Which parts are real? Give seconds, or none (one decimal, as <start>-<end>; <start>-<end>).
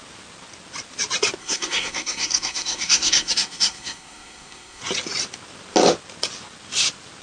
0.0-1.4; 4.8-7.2